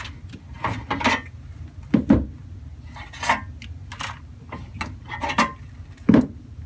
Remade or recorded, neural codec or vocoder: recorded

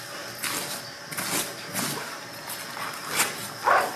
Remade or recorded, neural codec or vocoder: recorded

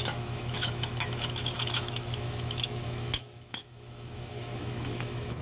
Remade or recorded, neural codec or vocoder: remade, autoencoder, DAC-VAE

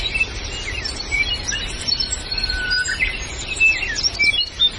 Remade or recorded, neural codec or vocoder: remade, vocoder, BigVGAN v2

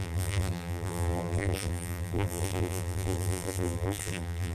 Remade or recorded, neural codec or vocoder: remade, vocoder, BigVGAN v2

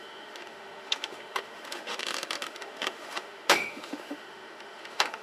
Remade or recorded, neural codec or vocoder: remade, autoencoder, DAC-VAE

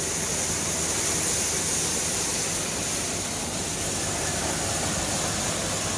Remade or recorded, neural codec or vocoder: recorded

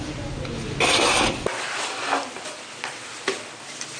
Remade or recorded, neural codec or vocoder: recorded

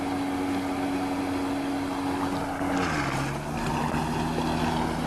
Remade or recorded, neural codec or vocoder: recorded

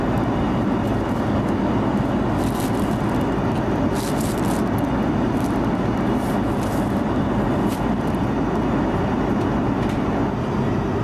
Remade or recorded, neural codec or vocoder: recorded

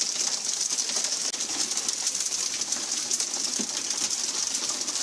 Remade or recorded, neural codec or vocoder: recorded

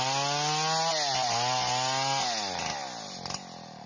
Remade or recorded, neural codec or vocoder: recorded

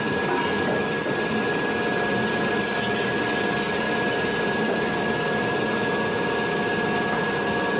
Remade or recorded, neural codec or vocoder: recorded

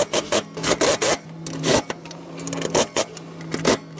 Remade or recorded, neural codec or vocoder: recorded